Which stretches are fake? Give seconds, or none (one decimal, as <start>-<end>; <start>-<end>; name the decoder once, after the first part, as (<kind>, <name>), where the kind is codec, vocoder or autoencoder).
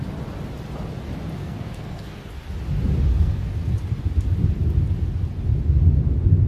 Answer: 1.4-2.2 (codec, SNAC); 3.1-3.7